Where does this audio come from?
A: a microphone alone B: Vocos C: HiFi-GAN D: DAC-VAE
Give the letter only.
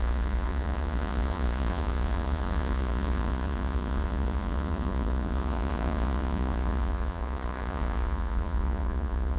B